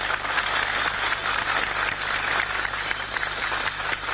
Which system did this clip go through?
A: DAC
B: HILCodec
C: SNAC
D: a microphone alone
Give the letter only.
D